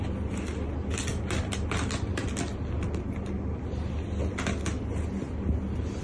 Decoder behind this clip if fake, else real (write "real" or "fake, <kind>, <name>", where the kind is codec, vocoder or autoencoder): real